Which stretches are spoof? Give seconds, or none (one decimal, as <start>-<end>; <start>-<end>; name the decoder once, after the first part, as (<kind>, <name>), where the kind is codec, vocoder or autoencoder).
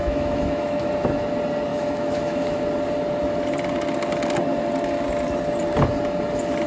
0.0-0.9 (autoencoder, DAC-VAE); 1.7-2.6